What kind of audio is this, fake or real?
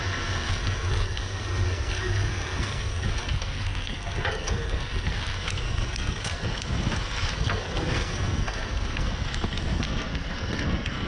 fake